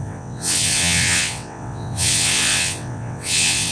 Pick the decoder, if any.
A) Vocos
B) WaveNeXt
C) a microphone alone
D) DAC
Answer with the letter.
B